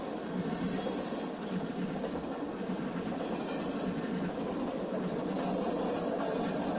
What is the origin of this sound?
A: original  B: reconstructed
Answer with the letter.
A